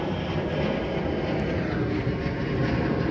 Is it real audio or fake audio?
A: real